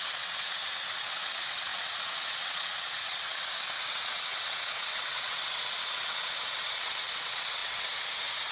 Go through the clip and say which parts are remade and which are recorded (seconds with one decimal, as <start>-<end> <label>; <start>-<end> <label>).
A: 0.0-8.5 remade